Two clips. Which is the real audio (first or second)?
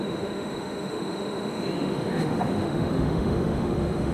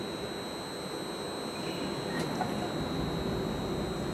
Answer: second